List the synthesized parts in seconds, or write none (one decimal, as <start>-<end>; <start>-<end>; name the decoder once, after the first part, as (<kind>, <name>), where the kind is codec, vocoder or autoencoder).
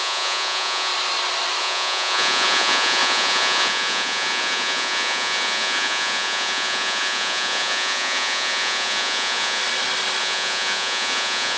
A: 0.0-0.9 (vocoder, Vocos); 1.6-9.6; 10.2-11.6